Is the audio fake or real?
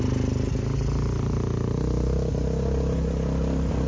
real